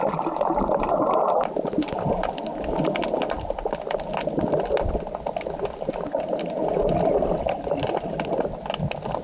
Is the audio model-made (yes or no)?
no